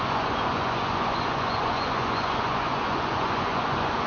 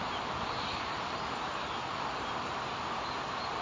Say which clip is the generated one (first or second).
first